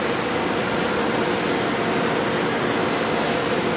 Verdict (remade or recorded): recorded